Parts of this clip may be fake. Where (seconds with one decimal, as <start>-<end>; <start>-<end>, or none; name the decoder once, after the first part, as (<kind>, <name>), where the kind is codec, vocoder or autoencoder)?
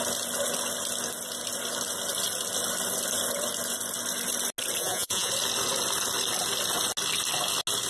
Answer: 4.8-5.3 (vocoder, Vocos)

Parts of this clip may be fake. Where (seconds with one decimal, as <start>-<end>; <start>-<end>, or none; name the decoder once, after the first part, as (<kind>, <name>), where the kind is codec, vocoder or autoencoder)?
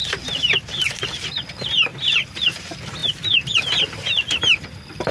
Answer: 0.0-1.0 (vocoder, BigVGAN v2); 1.9-2.6; 3.0-3.8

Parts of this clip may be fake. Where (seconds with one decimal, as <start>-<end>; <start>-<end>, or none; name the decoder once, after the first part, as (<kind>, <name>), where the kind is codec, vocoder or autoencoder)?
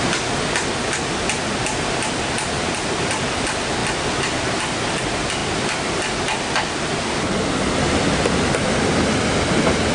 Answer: none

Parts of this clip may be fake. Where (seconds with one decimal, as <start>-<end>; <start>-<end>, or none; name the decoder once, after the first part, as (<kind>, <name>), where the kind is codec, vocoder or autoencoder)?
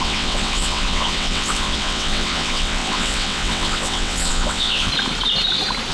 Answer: 0.0-4.9 (vocoder, WaveNeXt)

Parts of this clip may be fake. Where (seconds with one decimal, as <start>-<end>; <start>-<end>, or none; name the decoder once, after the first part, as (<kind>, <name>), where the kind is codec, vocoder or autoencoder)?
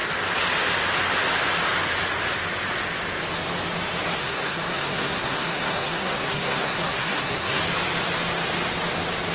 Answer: 4.2-7.6 (codec, SNAC)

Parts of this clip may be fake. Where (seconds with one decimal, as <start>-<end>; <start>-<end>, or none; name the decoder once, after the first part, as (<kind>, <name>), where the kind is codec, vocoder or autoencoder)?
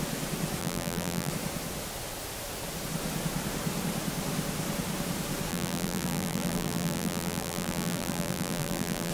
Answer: 0.6-1.3 (vocoder, BigVGAN v2); 5.5-9.1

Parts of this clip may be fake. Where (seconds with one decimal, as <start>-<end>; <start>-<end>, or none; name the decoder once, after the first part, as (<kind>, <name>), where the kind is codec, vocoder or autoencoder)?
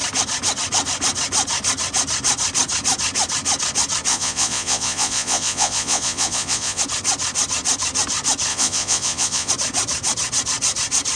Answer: 4.1-6.8 (vocoder, Vocos); 8.5-9.5